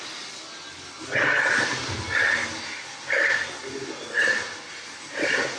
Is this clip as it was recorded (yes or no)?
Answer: yes